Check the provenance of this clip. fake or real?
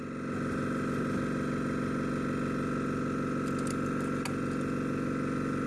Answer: real